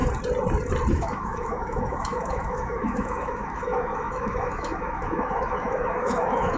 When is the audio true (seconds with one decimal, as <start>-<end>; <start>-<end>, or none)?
0.0-0.9